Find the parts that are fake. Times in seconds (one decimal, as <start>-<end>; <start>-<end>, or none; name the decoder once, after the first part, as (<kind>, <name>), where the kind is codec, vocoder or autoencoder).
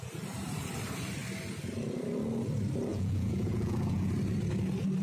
2.9-4.1 (vocoder, Vocos)